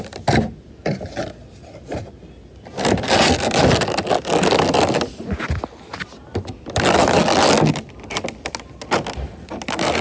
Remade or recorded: recorded